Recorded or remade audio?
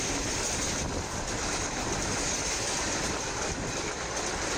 recorded